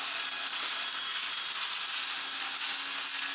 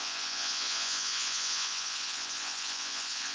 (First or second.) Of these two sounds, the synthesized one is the second